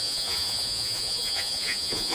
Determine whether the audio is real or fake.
fake